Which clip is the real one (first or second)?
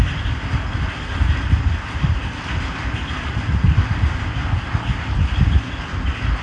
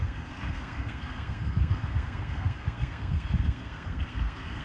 first